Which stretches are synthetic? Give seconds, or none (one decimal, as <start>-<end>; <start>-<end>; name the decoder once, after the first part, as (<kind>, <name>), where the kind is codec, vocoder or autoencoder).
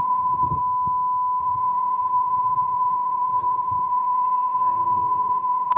0.0-0.6 (vocoder, WaveNeXt); 1.4-5.8